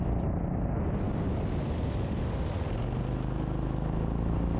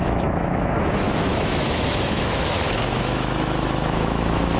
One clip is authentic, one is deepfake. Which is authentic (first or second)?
first